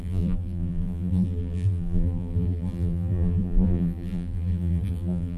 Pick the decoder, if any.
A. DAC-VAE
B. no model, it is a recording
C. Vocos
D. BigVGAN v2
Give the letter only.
D